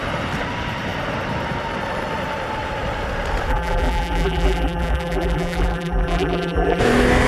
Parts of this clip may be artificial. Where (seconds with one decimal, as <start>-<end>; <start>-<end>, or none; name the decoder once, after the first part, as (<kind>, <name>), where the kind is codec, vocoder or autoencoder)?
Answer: 3.5-6.8 (vocoder, BigVGAN v2)

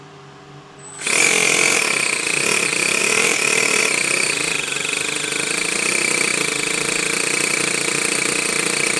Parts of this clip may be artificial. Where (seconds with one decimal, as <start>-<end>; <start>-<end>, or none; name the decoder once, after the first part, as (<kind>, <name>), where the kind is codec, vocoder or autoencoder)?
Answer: 3.0-3.8 (vocoder, BigVGAN v2)

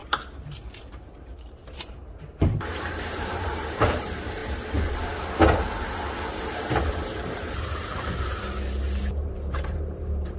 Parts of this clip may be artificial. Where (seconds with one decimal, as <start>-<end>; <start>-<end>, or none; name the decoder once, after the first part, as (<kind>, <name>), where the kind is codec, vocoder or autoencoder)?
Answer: 0.9-4.4 (vocoder, BigVGAN v2); 6.2-7.9; 9.0-10.4

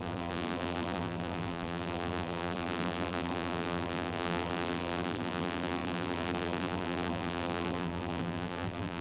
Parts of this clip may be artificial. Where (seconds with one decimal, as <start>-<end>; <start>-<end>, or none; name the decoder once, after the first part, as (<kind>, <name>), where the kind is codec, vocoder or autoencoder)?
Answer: 0.0-9.0 (vocoder, BigVGAN v2)

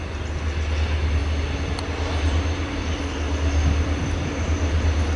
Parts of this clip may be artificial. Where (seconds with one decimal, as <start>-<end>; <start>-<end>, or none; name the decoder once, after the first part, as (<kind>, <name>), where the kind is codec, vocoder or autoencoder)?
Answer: none